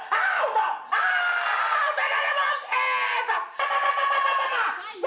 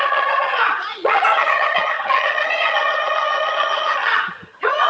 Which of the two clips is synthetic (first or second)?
second